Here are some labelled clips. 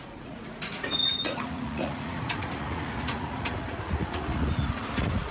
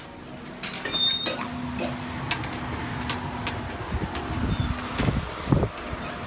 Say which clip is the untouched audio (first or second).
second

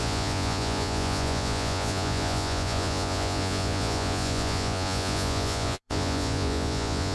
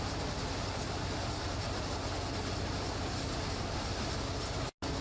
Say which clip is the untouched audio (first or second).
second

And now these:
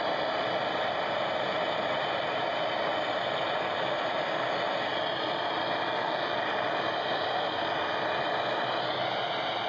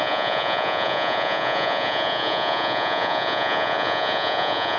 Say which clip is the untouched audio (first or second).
first